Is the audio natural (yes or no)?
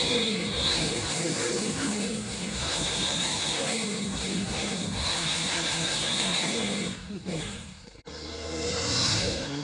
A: no